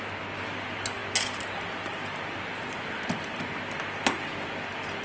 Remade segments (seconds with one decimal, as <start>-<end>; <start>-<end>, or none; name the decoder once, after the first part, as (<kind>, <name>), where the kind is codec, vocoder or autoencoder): none